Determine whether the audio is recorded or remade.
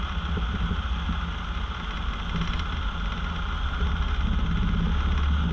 recorded